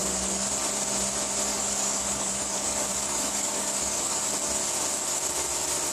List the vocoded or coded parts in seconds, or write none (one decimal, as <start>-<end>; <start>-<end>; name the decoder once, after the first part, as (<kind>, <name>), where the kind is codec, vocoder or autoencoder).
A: 0.0-0.5 (codec, DAC); 1.5-4.3